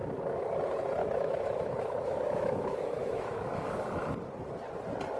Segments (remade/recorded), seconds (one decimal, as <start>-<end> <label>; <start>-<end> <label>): 0.0-1.0 recorded; 1.0-4.1 remade; 4.1-5.2 recorded